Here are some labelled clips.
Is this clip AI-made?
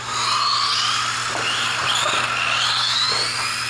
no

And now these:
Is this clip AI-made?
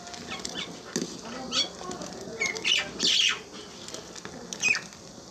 no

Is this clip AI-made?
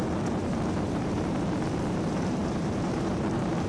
yes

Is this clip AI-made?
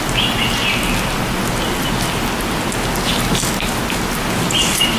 no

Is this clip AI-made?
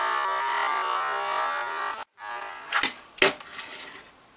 no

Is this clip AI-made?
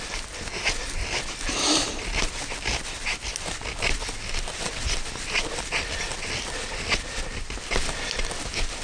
no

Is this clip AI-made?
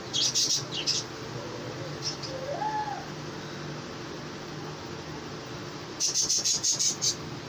no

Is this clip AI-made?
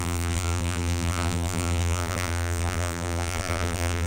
yes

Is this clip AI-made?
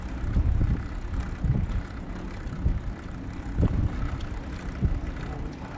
no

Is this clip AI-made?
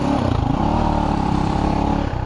yes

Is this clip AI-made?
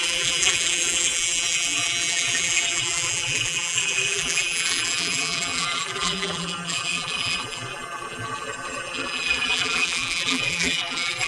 yes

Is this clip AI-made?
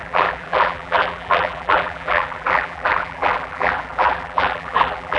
yes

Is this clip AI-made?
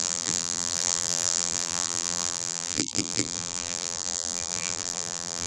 yes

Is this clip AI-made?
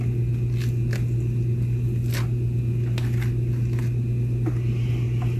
no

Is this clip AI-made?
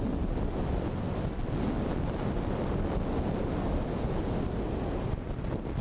no